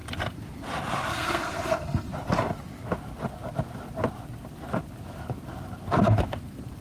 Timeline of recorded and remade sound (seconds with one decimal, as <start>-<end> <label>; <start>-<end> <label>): 0.0-1.1 recorded; 1.1-2.1 remade; 2.1-6.8 recorded